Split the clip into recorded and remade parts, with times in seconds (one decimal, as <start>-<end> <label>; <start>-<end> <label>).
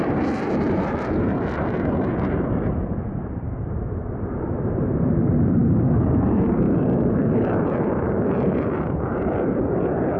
0.0-10.2 remade